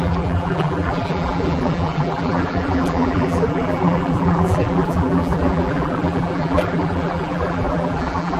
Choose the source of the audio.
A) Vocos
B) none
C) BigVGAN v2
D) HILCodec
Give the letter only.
C